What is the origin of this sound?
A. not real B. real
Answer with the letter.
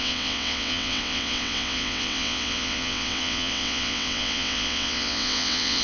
A